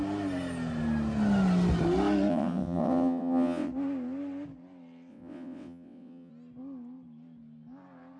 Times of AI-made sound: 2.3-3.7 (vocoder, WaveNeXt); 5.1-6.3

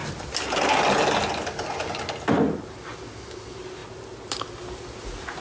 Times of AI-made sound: none

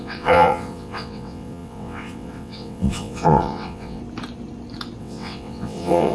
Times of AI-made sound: 0.0-4.0 (vocoder, WaveNeXt); 5.0-6.1

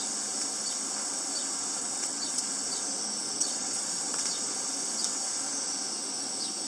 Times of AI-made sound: 1.8-2.4 (vocoder, WaveNeXt); 3.2-4.3

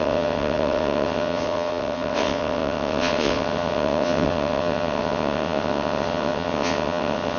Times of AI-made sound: 0.0-7.4 (vocoder, WaveNeXt)

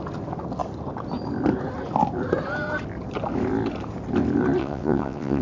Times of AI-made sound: 4.6-5.4 (vocoder, WaveNeXt)

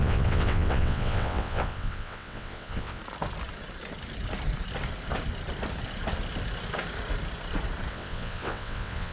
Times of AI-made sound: 0.0-3.0 (vocoder, WaveNeXt); 7.9-9.1